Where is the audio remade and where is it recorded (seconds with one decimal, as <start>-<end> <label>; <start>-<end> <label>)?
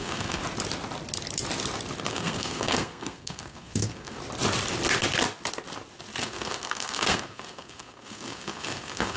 0.0-0.4 remade; 0.4-2.1 recorded; 2.1-4.2 remade; 4.2-6.2 recorded; 6.2-9.2 remade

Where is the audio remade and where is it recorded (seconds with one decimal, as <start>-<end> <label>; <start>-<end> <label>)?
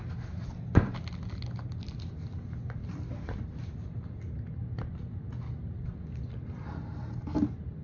0.0-7.8 recorded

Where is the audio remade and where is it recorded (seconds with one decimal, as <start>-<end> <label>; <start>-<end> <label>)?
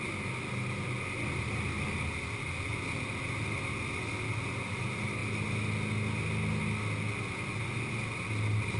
0.0-8.8 recorded